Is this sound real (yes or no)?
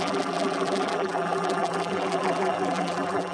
no